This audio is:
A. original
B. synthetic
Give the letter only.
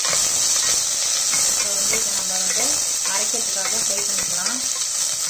A